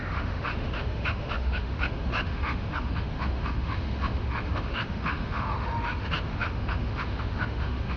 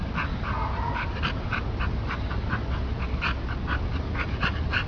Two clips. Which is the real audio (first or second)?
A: second